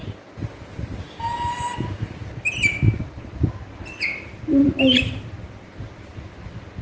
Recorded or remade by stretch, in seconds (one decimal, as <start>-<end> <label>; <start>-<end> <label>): 0.0-4.6 recorded; 4.6-5.8 remade; 5.8-6.8 recorded